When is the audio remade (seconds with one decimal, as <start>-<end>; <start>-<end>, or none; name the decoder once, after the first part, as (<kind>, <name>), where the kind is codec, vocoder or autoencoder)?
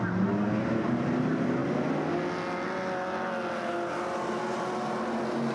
none